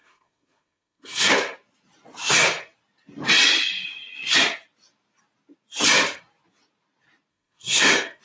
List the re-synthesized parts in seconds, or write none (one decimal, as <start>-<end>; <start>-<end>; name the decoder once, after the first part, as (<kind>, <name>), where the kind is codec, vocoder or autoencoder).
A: 0.0-1.3 (codec, SNAC); 7.3-8.2